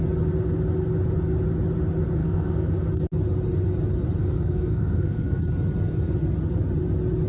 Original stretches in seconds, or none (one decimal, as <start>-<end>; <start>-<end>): 0.0-2.2; 2.7-4.2; 5.4-7.3